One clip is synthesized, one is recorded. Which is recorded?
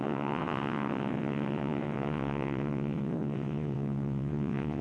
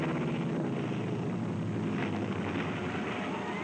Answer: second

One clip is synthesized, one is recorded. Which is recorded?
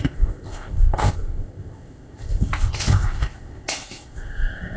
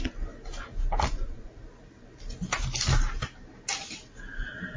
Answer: second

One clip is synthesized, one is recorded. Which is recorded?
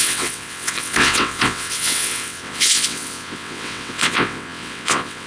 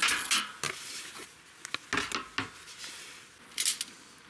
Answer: second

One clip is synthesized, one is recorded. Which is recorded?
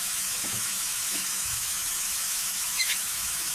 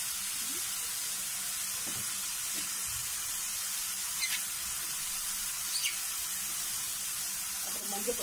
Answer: second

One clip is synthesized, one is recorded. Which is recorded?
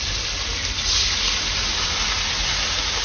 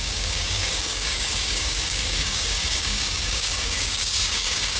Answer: first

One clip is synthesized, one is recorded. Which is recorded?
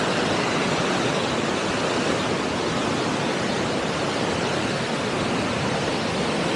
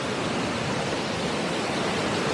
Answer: first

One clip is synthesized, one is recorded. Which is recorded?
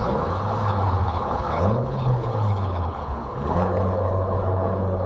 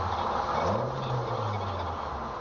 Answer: second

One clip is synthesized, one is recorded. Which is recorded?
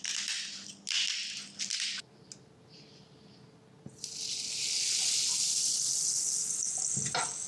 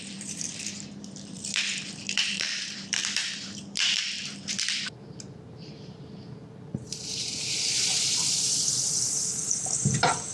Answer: first